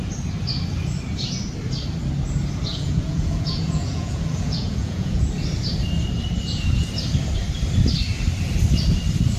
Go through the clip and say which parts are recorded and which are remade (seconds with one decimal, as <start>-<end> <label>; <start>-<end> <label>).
0.0-2.7 recorded; 2.7-5.3 remade; 5.3-9.4 recorded